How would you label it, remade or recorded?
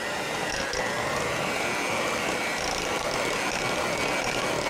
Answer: recorded